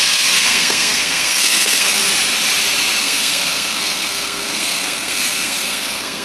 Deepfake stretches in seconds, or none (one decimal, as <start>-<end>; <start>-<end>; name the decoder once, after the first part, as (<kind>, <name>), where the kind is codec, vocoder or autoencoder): 0.0-2.0 (codec, SNAC); 3.0-6.2